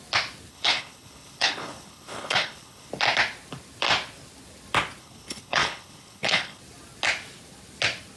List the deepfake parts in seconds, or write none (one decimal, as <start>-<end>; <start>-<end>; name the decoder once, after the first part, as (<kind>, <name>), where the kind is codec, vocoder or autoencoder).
0.5-2.9 (codec, HILCodec); 5.0-6.6

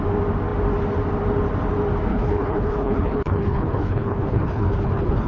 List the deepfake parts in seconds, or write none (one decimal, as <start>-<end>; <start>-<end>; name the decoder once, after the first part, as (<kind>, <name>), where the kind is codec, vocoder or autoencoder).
2.1-5.3 (codec, HILCodec)

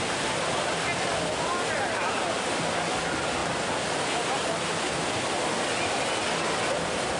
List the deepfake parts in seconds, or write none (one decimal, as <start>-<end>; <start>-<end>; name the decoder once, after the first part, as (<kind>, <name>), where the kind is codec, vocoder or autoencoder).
none

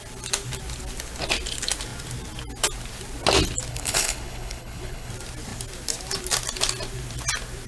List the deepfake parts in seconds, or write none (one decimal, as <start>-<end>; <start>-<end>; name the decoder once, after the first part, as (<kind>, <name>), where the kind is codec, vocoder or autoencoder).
3.7-5.1 (codec, HILCodec)

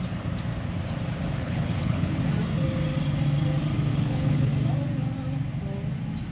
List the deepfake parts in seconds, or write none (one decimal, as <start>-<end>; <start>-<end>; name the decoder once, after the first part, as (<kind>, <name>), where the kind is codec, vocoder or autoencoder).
1.4-2.2 (codec, HILCodec); 3.9-4.5

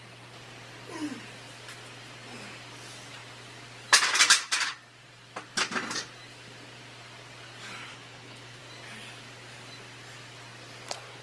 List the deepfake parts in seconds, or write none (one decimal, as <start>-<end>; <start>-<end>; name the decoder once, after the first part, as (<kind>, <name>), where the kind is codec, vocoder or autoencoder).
7.9-8.6 (codec, HILCodec)

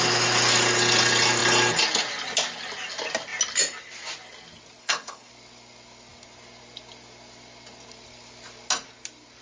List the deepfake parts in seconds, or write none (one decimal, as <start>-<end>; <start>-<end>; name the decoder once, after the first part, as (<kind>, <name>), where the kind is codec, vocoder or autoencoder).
4.8-5.3 (codec, HILCodec)

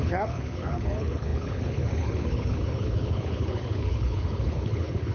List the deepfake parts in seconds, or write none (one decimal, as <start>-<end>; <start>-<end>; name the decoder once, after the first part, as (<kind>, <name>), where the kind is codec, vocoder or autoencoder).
0.0-5.1 (codec, HILCodec)